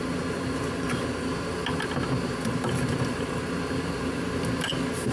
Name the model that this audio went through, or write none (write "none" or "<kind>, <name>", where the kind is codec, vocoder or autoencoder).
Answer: none